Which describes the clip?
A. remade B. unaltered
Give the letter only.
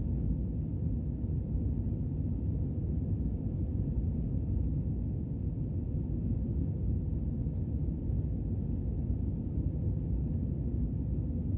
B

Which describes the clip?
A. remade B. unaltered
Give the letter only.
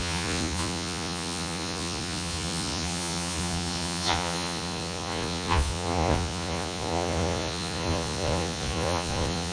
A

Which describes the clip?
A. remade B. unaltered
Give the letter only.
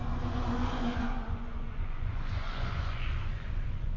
A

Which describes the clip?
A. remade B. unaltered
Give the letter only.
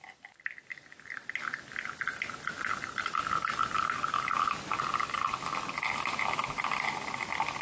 B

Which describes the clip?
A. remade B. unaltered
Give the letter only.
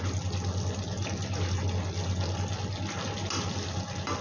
B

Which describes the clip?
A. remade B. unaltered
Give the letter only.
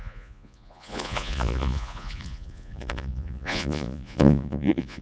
A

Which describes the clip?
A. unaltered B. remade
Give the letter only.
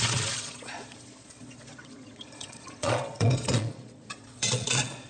B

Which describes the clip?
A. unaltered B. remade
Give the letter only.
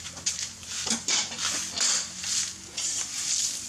A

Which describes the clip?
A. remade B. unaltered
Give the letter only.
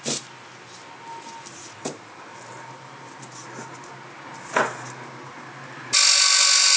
B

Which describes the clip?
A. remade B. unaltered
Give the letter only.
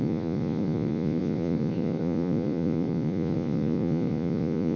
A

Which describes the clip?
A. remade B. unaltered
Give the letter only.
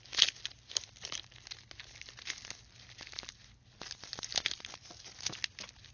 B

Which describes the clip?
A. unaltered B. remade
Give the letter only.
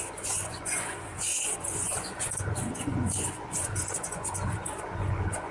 B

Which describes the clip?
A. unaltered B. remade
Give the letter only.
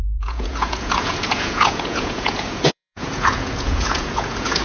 B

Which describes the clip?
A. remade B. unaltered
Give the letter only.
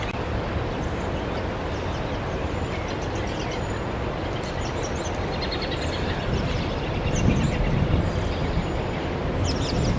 B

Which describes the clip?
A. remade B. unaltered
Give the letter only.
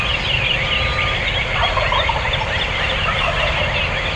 B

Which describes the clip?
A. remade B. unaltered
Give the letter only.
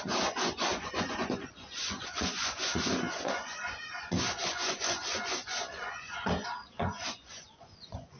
A